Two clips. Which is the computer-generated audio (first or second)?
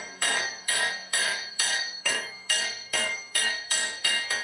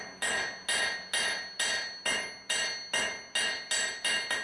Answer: first